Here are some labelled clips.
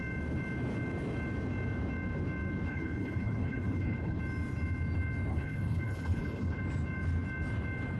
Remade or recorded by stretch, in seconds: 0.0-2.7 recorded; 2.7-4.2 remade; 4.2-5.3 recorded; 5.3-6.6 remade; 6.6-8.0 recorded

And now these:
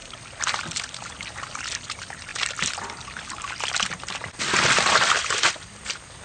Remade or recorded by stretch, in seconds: 0.0-2.3 recorded; 2.3-4.9 remade; 4.9-6.2 recorded